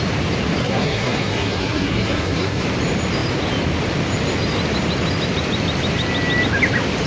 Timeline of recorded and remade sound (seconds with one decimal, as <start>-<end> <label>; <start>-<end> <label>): 0.0-0.6 recorded; 0.6-2.6 remade; 2.6-7.1 recorded